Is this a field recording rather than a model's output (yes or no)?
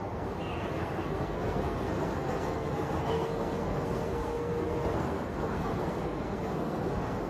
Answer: no